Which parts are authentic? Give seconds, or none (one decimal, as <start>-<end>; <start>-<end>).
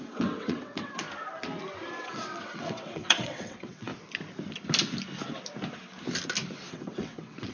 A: 1.0-2.0; 3.9-6.7